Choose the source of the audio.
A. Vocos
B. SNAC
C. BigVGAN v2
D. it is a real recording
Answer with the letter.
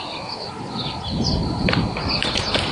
D